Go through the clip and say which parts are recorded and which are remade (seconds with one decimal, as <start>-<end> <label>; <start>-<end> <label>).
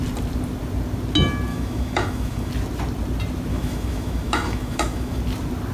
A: 0.0-1.5 recorded; 1.5-2.5 remade; 2.5-3.5 recorded; 3.5-5.2 remade; 5.2-5.7 recorded